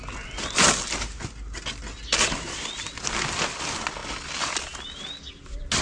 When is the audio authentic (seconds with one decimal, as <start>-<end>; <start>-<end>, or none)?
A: 0.0-5.8